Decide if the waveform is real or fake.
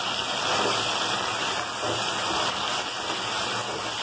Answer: real